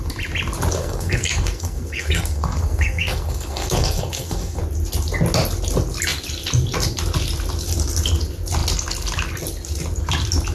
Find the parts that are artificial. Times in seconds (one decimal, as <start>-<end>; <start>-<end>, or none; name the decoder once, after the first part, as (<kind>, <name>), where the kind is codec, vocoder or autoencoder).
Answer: 0.8-4.6 (codec, SNAC)